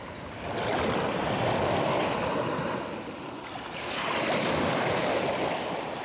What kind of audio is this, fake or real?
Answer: real